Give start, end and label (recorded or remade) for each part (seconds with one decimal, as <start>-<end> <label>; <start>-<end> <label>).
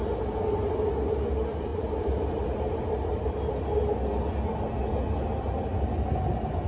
0.0-6.7 recorded